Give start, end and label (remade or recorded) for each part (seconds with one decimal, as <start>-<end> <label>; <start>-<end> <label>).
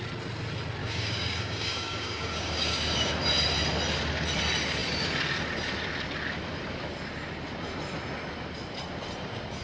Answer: 0.0-0.8 recorded; 0.8-3.1 remade; 3.1-9.6 recorded